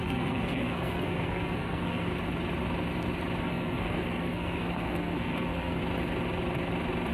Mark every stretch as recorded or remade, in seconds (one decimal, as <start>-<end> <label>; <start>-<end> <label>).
0.0-2.1 remade; 2.1-3.4 recorded; 3.4-5.8 remade; 5.8-7.1 recorded